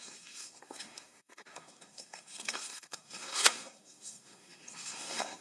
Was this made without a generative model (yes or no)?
no